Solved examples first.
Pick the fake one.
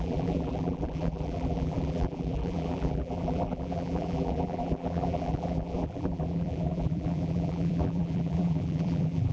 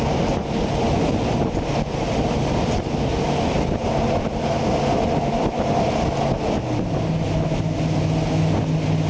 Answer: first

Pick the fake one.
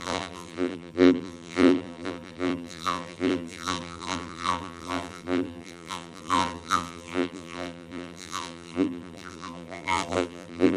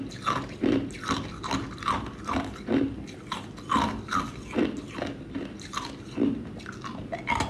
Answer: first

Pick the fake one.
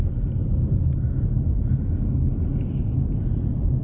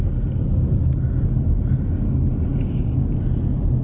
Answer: first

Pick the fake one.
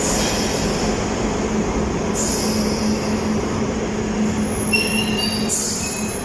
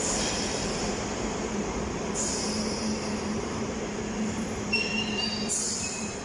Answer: second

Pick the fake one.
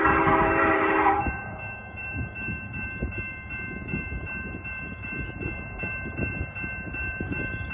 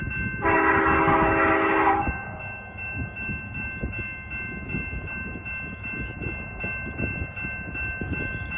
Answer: first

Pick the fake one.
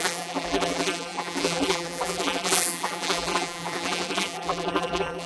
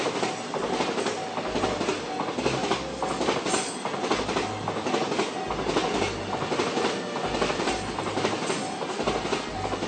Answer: first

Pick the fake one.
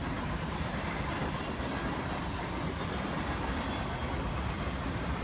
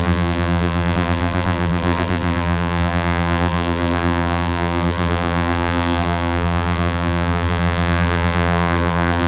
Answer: second